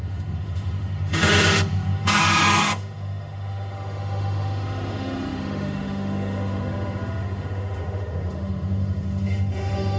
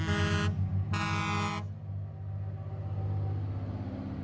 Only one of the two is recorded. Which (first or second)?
second